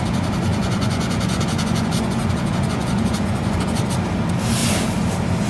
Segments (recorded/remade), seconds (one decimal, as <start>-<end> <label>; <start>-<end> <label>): 0.0-0.5 recorded; 0.5-3.8 remade; 3.8-5.5 recorded